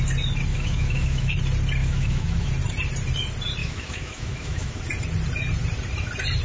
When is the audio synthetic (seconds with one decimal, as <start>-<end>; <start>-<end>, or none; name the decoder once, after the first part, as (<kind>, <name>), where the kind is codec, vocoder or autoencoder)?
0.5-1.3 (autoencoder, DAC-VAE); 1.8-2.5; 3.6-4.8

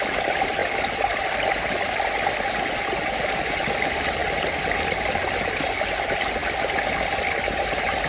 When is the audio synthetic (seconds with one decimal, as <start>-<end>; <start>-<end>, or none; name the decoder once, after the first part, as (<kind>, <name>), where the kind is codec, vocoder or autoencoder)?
none

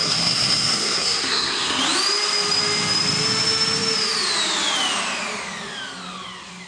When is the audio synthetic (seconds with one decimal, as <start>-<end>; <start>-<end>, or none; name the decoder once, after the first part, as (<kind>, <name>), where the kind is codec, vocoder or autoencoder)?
0.0-1.8 (codec, SNAC)

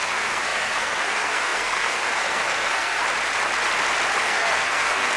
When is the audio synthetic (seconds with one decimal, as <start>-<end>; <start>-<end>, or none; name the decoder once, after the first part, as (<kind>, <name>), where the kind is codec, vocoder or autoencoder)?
0.0-3.0 (codec, SNAC); 4.2-5.2

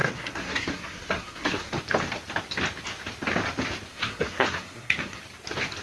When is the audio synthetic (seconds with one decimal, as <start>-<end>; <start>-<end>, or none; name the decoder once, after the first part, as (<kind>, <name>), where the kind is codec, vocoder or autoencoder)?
0.0-1.7 (codec, SNAC); 3.9-5.2

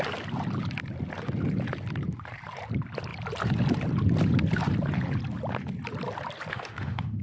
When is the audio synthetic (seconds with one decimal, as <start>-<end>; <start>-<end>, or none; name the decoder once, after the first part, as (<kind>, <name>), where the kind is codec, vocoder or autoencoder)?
6.5-7.2 (autoencoder, DAC-VAE)

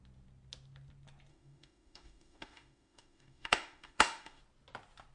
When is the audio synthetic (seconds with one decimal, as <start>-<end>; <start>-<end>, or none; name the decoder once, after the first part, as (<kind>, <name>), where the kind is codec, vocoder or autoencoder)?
1.3-4.4 (autoencoder, DAC-VAE)

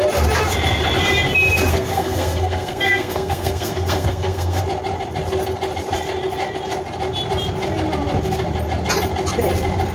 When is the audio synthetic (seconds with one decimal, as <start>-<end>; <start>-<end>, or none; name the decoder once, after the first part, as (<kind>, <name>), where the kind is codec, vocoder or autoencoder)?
1.7-4.6 (codec, SNAC)